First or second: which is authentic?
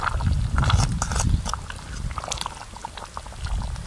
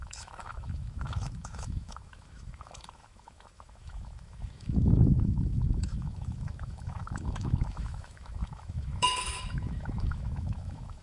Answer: first